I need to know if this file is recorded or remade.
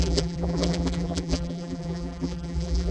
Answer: remade